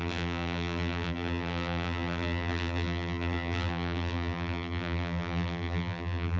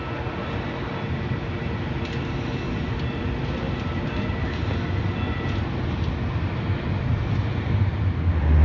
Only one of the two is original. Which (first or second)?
second